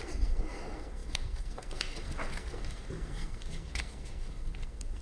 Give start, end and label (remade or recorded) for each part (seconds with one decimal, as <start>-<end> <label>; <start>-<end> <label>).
0.0-5.0 remade